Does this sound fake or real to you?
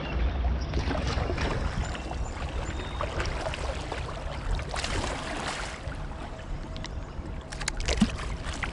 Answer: real